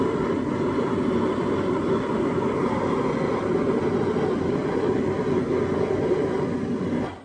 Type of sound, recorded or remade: recorded